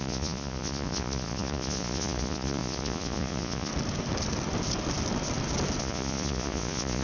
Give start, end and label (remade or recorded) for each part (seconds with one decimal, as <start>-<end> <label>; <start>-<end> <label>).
0.0-3.7 remade; 3.7-5.8 recorded; 5.8-7.0 remade